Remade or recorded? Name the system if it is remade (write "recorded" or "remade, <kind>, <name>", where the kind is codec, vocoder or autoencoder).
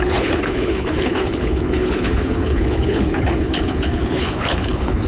remade, codec, HILCodec